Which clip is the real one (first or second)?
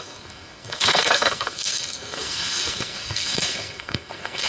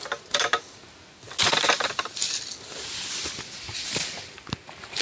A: second